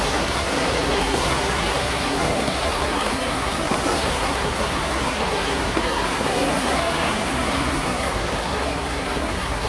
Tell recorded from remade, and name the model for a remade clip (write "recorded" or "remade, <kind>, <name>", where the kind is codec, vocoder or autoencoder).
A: remade, codec, SNAC